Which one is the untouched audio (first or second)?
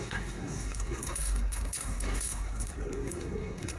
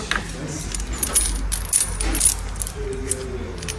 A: second